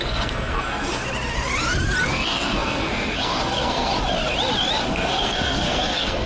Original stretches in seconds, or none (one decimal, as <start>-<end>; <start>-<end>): 1.0-2.1; 3.9-4.9